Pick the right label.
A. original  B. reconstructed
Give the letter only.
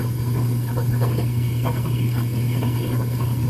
B